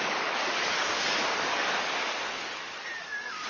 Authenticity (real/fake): fake